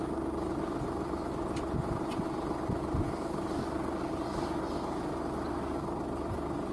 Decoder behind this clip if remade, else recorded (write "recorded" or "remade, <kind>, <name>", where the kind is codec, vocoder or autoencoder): recorded